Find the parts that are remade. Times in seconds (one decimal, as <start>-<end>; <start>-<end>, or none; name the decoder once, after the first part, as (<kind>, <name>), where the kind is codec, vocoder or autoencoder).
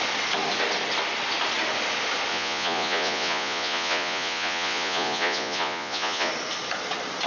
2.3-6.3 (vocoder, Vocos)